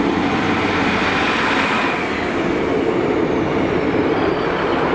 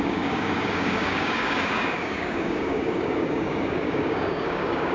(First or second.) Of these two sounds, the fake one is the second